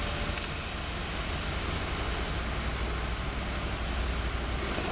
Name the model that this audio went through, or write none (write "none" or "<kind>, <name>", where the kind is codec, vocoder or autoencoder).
none